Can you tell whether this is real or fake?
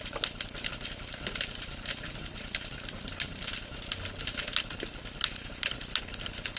real